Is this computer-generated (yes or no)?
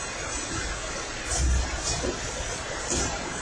no